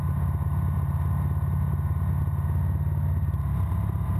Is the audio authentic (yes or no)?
yes